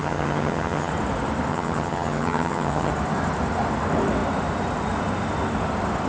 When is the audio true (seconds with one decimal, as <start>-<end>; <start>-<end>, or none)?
0.9-1.5; 2.9-6.1